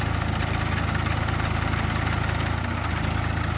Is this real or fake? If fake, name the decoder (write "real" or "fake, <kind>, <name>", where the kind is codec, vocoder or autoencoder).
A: real